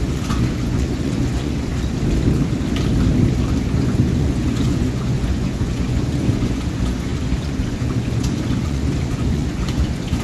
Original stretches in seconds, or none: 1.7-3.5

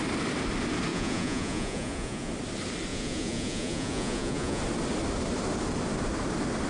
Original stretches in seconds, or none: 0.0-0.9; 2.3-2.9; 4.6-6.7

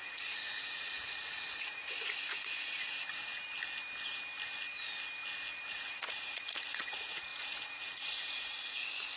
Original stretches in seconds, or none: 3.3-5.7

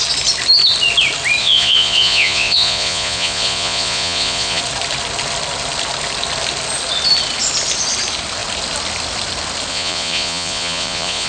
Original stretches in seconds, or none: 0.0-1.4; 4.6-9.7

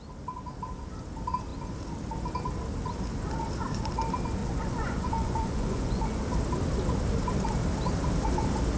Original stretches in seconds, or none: 0.0-4.4; 6.2-8.8